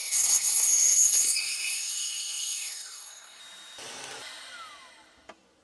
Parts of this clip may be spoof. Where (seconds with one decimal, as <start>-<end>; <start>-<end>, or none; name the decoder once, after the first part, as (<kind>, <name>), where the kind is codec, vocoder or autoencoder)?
0.0-3.4 (codec, SNAC)